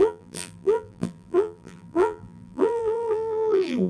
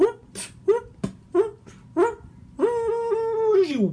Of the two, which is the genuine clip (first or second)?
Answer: second